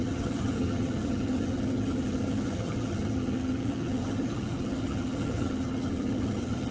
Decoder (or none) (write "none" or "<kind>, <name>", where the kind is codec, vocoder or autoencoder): vocoder, HiFi-GAN